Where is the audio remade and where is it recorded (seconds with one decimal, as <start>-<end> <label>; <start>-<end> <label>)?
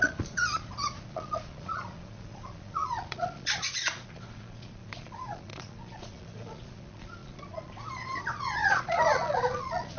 0.0-10.0 remade